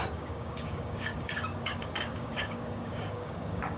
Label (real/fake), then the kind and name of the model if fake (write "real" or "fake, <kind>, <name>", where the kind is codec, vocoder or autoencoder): fake, codec, DAC